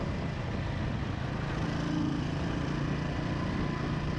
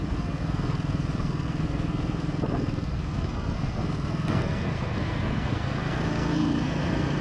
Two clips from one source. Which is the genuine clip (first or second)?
first